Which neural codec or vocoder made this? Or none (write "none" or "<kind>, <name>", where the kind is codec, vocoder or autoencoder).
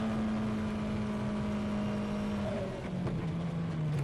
none